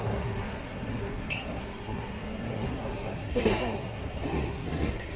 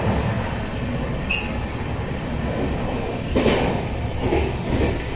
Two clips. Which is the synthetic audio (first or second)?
first